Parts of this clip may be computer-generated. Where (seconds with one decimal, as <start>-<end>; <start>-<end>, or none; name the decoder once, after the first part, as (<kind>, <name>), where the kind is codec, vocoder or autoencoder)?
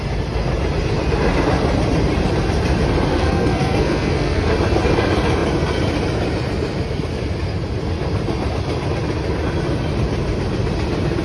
3.1-4.5 (codec, SNAC)